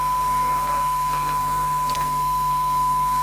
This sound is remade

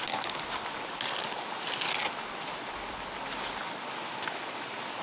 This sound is recorded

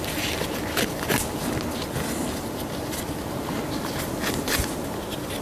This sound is recorded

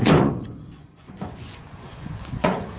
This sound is remade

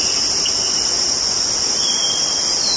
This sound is recorded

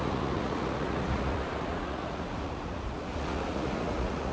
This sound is remade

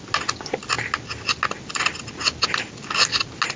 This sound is recorded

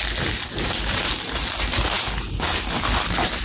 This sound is recorded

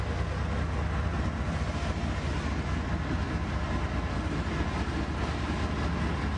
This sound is recorded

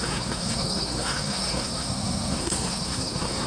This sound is remade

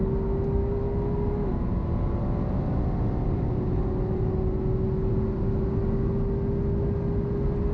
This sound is recorded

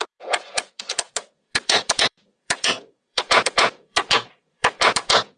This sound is remade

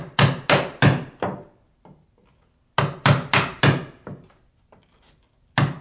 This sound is recorded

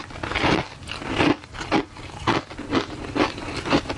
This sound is recorded